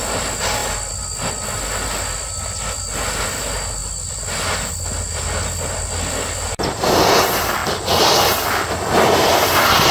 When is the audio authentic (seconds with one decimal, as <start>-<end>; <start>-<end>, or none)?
0.0-9.9

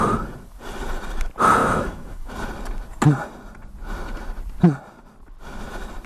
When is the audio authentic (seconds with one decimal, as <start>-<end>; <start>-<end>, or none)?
0.0-1.6; 2.3-6.1

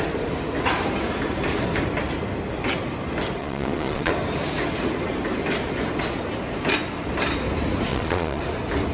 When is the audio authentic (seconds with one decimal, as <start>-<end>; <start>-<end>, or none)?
0.0-3.4; 4.1-7.9; 8.4-8.9

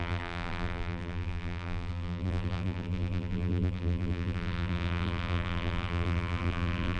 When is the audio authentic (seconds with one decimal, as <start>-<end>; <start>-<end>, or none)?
none